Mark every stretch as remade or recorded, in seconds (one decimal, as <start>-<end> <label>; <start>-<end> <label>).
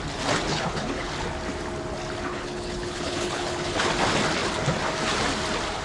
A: 0.0-0.5 recorded; 0.5-1.1 remade; 1.1-2.3 recorded; 2.3-3.9 remade; 3.9-5.8 recorded